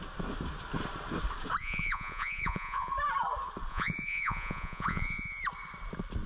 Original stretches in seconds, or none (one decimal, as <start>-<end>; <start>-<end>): 0.0-1.6; 2.9-3.7; 5.4-6.3